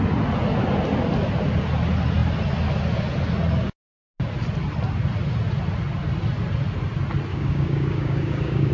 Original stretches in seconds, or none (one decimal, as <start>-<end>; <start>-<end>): 0.0-7.3